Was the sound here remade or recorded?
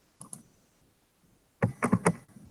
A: recorded